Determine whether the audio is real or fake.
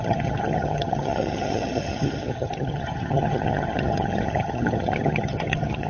fake